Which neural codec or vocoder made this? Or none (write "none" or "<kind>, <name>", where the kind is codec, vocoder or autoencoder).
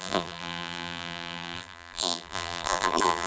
vocoder, BigVGAN v2